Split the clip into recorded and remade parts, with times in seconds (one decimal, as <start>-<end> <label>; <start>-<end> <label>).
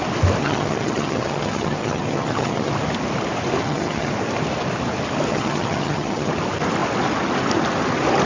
0.0-0.4 recorded; 0.4-2.7 remade; 2.7-3.6 recorded; 3.6-4.1 remade; 4.1-5.3 recorded; 5.3-6.3 remade; 6.3-8.3 recorded